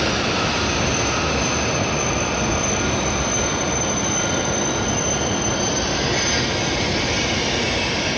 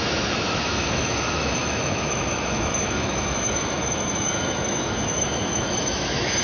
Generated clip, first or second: second